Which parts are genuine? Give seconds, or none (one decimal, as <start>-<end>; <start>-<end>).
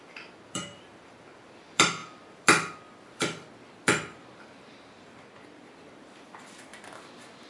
6.7-7.5